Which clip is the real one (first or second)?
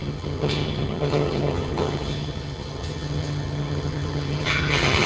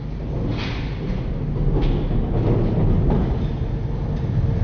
second